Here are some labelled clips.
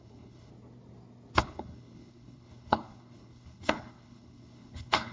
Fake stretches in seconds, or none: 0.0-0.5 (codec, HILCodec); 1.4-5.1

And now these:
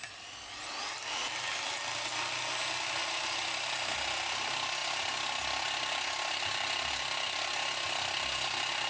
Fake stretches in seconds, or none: none

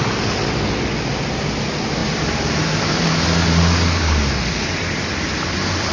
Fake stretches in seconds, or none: 2.0-3.1 (vocoder, BigVGAN v2)

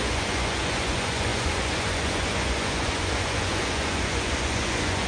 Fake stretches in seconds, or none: 0.0-5.1 (vocoder, Vocos)

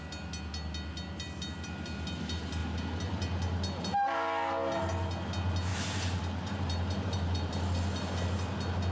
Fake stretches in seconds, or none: 5.7-7.5 (vocoder, BigVGAN v2)

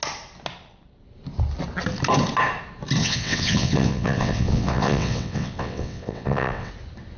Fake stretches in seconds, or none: 3.0-6.7 (vocoder, WaveNeXt)

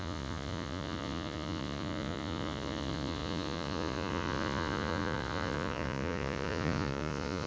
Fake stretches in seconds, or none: 0.0-7.5 (vocoder, Vocos)